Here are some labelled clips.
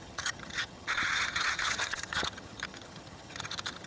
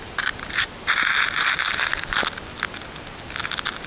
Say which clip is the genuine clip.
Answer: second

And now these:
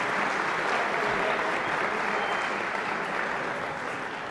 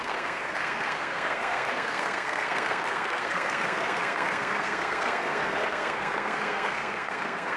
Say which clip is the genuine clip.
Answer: first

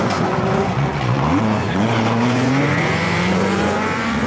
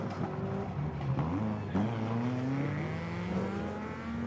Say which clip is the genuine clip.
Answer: second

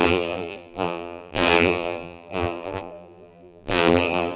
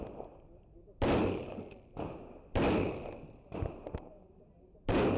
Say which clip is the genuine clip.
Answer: second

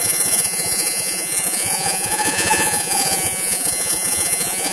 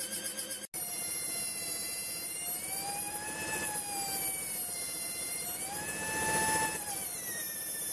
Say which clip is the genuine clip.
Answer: second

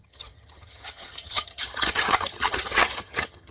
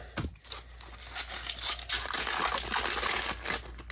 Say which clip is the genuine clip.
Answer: second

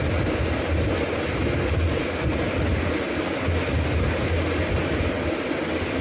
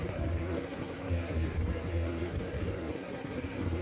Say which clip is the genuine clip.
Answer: first